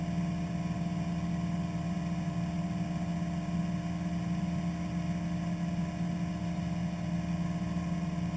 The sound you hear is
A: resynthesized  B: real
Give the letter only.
B